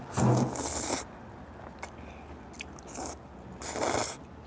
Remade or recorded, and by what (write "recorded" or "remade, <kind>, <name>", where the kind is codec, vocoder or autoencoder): recorded